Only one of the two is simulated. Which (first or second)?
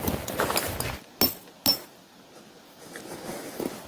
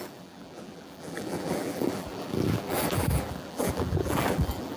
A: second